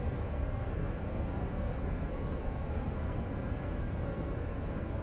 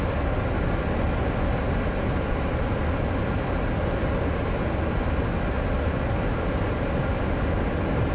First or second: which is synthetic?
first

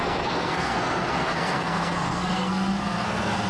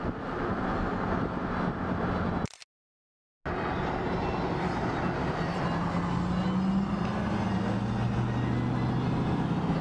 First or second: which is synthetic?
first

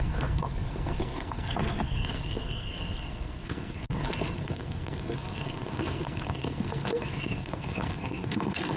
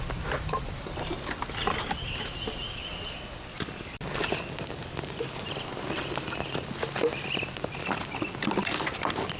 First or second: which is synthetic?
first